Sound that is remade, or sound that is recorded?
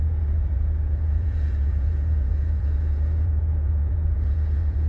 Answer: remade